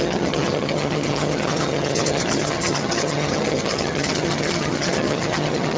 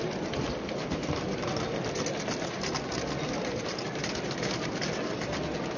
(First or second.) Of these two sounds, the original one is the second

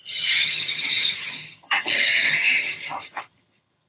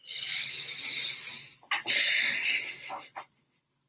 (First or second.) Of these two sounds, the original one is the second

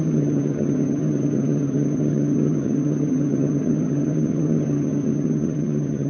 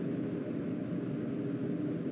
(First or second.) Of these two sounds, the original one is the second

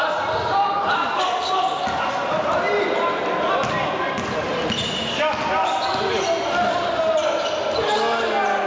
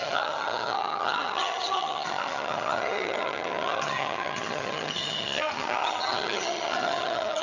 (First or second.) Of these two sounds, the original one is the first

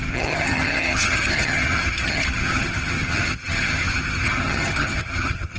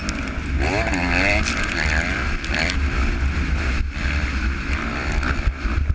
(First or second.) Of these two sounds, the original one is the second